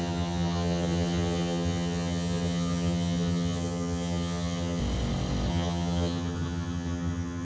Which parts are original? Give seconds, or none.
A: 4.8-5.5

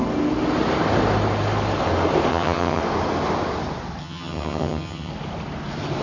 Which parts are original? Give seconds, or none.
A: 0.0-2.3; 2.8-4.0; 5.1-6.0

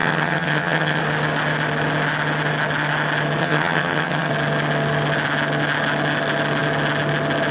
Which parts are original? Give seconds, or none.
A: 1.0-3.4; 4.3-7.5

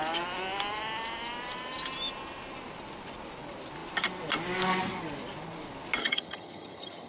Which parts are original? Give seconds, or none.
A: 0.0-6.0

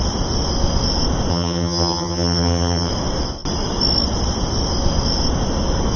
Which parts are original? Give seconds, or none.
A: 0.0-1.3; 2.9-6.0

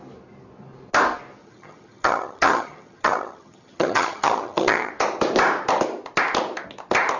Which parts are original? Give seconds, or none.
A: 0.0-1.4; 4.9-7.2